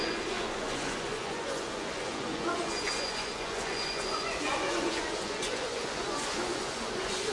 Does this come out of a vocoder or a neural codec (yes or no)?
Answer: yes